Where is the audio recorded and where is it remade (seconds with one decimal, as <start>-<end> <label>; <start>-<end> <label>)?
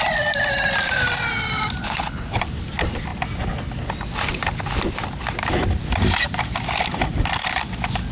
0.0-1.8 recorded; 1.8-2.4 remade; 2.4-8.1 recorded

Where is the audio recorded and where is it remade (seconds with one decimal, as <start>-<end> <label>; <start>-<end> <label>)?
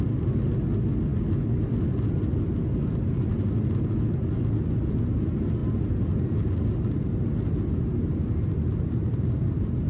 0.0-9.9 recorded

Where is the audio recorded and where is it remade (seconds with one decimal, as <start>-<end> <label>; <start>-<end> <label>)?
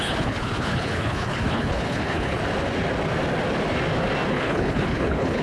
0.0-2.4 remade; 2.4-4.3 recorded; 4.3-5.4 remade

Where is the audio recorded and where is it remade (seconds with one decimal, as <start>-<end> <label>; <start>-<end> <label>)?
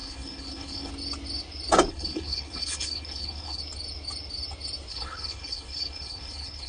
0.0-0.9 remade; 0.9-1.9 recorded; 1.9-3.6 remade; 3.6-4.9 recorded; 4.9-6.7 remade